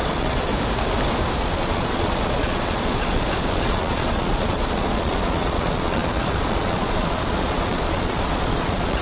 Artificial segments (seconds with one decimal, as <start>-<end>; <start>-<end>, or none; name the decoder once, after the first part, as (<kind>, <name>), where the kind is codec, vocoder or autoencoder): 0.0-0.5 (vocoder, Vocos); 1.4-9.0